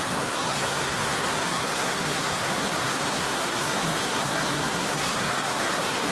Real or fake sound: fake